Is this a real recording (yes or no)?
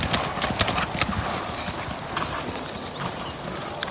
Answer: yes